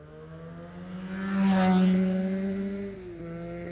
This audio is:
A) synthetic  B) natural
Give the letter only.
B